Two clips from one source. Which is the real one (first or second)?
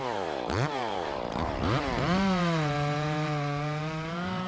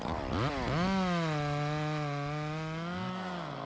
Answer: second